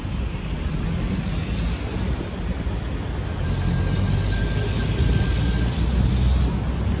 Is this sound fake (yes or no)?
no